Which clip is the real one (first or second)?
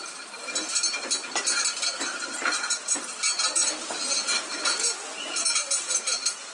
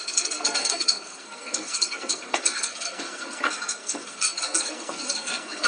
first